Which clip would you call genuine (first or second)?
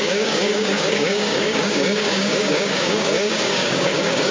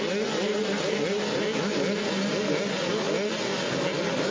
second